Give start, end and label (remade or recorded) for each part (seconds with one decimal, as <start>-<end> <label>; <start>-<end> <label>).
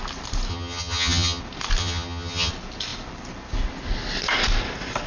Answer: 0.0-0.5 recorded; 0.5-1.4 remade; 1.4-1.8 recorded; 1.8-2.5 remade; 2.5-5.1 recorded